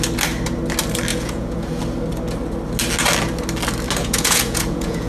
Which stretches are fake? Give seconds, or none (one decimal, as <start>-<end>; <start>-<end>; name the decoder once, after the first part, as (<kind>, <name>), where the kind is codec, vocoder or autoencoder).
1.1-1.8 (vocoder, Vocos); 4.0-5.1